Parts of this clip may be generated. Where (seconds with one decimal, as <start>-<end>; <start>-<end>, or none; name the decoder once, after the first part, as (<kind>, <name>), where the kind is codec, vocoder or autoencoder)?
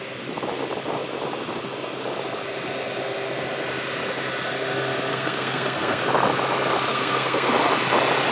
5.1-6.0 (codec, SNAC); 6.9-7.5